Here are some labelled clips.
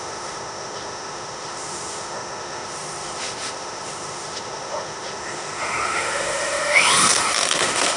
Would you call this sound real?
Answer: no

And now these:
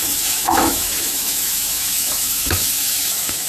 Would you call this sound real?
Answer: no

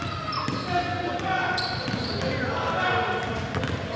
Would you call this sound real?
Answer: yes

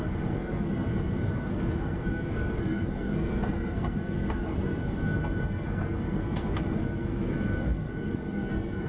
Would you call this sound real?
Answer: no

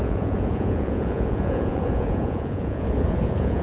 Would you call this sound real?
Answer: no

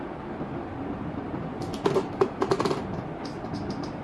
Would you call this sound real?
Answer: no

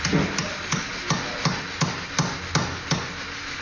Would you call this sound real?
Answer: yes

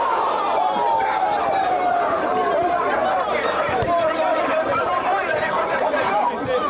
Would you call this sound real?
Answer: no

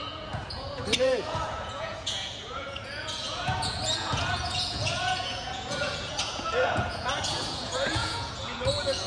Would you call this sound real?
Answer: no